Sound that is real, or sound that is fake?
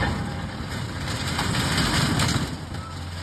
real